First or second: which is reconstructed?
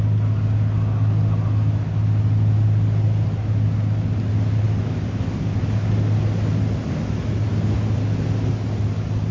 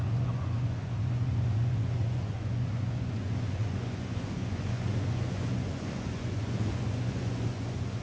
second